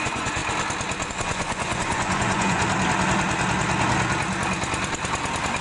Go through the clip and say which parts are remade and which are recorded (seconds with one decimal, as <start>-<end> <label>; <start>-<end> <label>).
0.0-0.4 remade; 0.4-1.1 recorded; 1.1-2.6 remade; 2.6-5.6 recorded